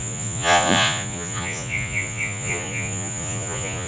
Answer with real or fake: fake